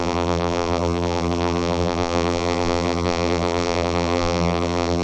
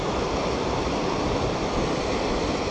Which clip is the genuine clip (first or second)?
second